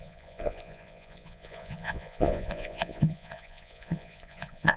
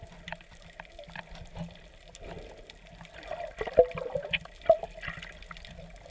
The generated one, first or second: first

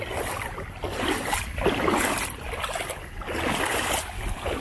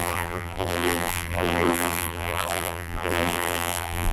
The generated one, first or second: second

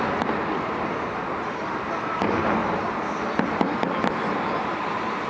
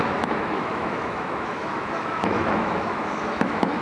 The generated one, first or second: second